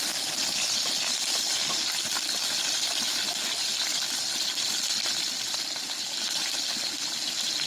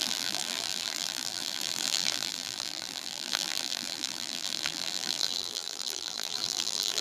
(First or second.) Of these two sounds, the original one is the first